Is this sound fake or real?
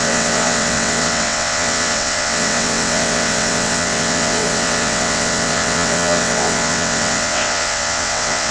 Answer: fake